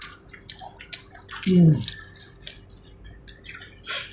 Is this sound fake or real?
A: real